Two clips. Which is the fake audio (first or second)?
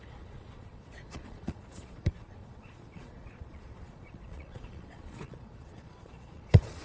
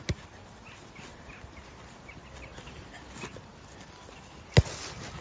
first